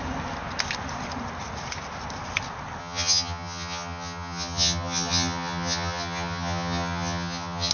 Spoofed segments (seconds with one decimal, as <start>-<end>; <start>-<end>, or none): 2.8-7.7